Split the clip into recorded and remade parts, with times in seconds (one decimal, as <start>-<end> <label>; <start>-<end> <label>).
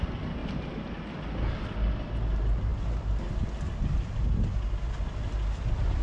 0.0-0.4 recorded; 0.4-1.1 remade; 1.1-6.0 recorded